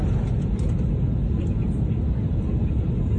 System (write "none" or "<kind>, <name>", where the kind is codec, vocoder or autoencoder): none